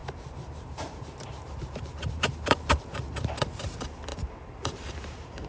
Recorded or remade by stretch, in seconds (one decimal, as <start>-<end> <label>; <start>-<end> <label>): 0.0-3.3 remade; 3.3-4.1 recorded; 4.1-5.5 remade